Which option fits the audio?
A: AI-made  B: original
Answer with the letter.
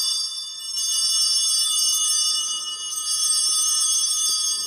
A